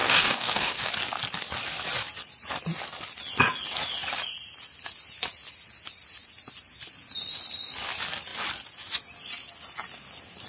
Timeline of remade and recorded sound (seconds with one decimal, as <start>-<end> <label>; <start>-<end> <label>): 0.0-0.9 remade; 0.9-10.5 recorded